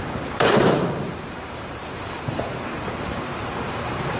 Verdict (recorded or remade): remade